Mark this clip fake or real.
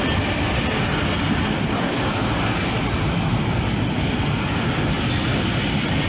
real